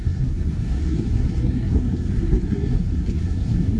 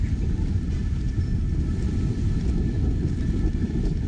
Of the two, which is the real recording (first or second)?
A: second